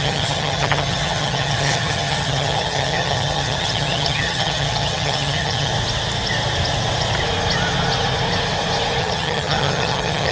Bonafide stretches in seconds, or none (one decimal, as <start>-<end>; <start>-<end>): 5.7-9.0